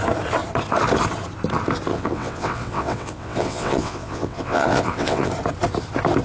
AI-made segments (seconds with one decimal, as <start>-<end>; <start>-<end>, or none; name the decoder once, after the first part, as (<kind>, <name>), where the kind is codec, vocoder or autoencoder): 1.9-5.3 (vocoder, WaveNeXt)